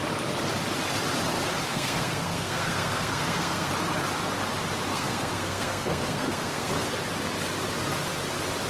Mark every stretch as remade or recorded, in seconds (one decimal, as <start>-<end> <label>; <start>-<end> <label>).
0.0-1.7 recorded; 1.7-3.7 remade; 3.7-4.9 recorded; 4.9-6.7 remade; 6.7-8.7 recorded